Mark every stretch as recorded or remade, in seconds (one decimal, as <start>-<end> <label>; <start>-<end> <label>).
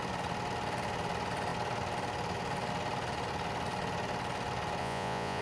0.0-4.8 recorded; 4.8-5.4 remade